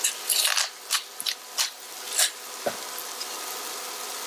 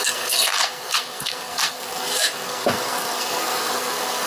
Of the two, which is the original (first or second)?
first